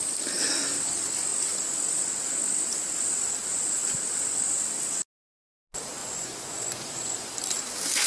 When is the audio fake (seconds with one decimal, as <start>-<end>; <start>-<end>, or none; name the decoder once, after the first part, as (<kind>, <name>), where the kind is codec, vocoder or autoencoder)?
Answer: 6.0-7.3 (vocoder, Vocos)